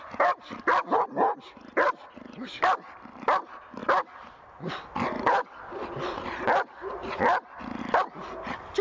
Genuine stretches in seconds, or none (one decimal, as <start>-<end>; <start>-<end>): 0.0-8.8